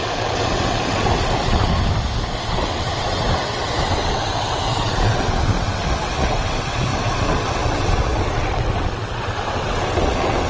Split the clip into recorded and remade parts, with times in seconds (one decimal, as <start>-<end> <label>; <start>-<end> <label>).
0.0-1.7 remade; 1.7-2.4 recorded; 2.4-10.5 remade